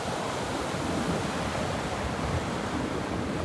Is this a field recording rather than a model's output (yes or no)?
no